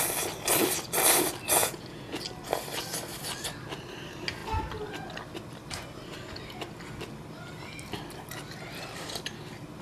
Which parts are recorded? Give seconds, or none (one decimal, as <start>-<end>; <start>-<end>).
0.0-1.6; 2.2-9.8